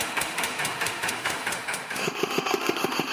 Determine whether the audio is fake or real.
fake